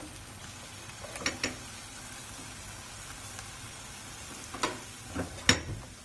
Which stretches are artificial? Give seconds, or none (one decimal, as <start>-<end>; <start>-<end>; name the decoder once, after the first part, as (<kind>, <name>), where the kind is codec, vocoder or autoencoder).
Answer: none